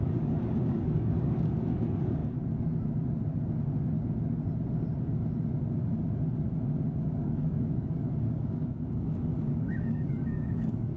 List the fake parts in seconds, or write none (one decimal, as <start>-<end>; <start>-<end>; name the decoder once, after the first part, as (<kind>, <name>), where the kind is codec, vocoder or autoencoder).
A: 0.0-2.2 (codec, DAC); 7.0-11.0